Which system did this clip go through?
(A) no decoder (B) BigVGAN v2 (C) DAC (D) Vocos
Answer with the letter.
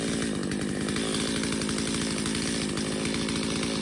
A